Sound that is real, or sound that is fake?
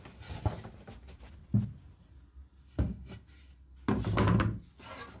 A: real